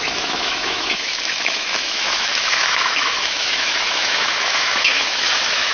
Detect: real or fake fake